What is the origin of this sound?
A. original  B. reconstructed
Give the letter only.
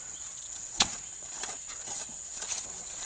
B